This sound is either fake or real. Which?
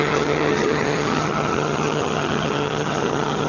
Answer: fake